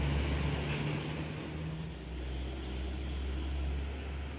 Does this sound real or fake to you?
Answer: real